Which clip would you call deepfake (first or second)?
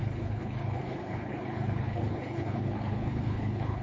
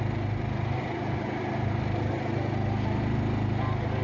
first